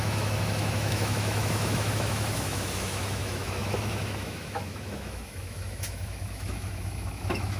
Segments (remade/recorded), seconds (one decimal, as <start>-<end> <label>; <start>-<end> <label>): 0.0-7.6 remade

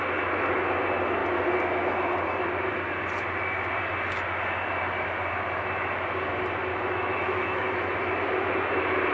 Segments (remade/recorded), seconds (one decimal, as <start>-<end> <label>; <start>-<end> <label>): 0.0-6.7 recorded; 6.7-7.9 remade; 7.9-9.1 recorded

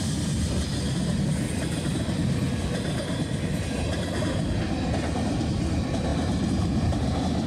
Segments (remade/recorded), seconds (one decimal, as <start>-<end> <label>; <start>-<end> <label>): 0.0-7.5 recorded